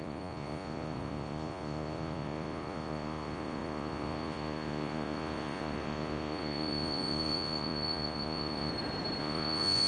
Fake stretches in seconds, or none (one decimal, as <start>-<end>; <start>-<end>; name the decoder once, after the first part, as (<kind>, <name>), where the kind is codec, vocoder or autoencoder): 0.0-8.7 (vocoder, Vocos); 9.2-9.9